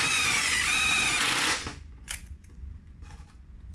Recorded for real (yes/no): no